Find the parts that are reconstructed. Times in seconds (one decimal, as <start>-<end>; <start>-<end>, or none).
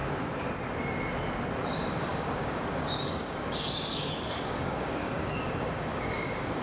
1.7-6.6